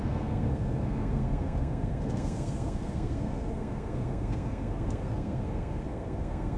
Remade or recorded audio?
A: remade